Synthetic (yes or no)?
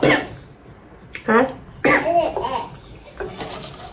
no